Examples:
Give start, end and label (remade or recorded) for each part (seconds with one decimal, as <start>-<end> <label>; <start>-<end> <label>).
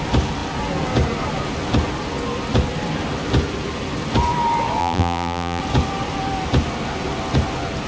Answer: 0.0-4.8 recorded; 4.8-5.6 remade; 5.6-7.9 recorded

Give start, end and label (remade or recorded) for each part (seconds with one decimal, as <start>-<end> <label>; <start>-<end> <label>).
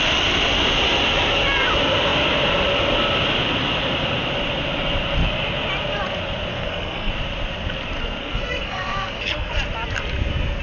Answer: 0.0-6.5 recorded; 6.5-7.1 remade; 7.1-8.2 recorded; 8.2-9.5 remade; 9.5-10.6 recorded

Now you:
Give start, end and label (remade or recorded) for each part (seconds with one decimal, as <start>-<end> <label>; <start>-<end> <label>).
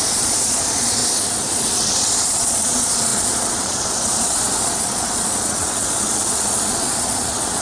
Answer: 0.0-1.0 remade; 1.0-1.5 recorded; 1.5-7.6 remade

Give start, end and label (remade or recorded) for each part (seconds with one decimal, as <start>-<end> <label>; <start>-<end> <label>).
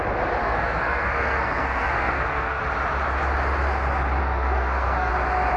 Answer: 0.0-0.4 recorded; 0.4-2.6 remade; 2.6-4.2 recorded; 4.2-5.1 remade; 5.1-5.6 recorded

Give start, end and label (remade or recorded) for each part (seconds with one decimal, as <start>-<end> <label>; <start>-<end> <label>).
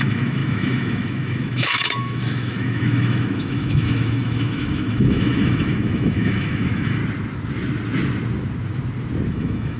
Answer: 0.0-7.0 remade; 7.0-9.3 recorded; 9.3-9.8 remade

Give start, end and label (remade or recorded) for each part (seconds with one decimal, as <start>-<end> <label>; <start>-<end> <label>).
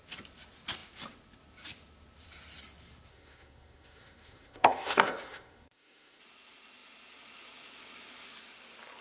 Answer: 0.0-3.1 recorded; 3.1-6.2 remade; 6.2-9.0 recorded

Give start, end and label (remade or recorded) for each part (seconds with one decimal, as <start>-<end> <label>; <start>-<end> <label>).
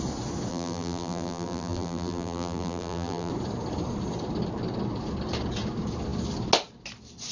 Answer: 0.0-0.5 recorded; 0.5-3.3 remade; 3.3-7.3 recorded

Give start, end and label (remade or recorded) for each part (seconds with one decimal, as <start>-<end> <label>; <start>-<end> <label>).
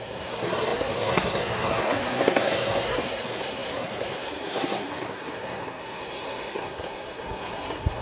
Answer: 0.0-8.0 remade